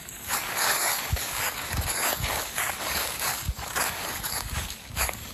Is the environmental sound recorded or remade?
remade